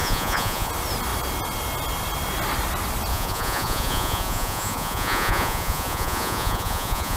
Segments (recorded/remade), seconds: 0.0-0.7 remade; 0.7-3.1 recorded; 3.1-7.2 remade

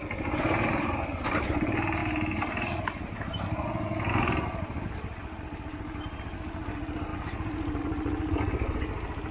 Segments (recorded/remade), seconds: 0.0-9.3 recorded

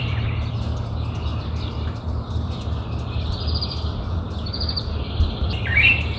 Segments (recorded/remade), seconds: 0.0-6.2 remade

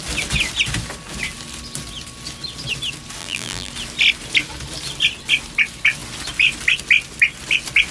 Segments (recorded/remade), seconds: 0.0-3.2 recorded; 3.2-3.7 remade; 3.7-7.9 recorded

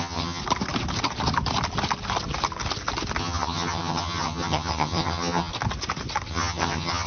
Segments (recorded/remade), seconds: 0.0-0.4 remade; 0.4-3.2 recorded; 3.2-5.5 remade; 5.5-6.3 recorded; 6.3-7.1 remade

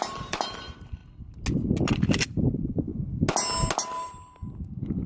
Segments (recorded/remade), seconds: 0.0-1.0 remade; 1.0-1.9 recorded; 1.9-2.9 remade; 2.9-5.1 recorded

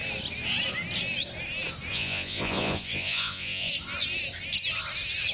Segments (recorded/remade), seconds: 0.0-1.9 recorded; 1.9-3.7 remade; 3.7-5.3 recorded

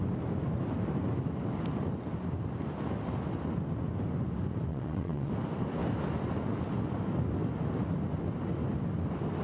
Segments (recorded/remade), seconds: 0.0-4.7 recorded; 4.7-5.3 remade; 5.3-9.4 recorded